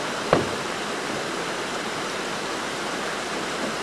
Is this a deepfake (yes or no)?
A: yes